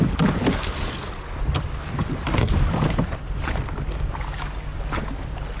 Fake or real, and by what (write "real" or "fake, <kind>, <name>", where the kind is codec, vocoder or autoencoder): real